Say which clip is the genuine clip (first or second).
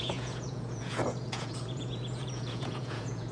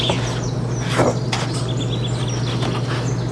second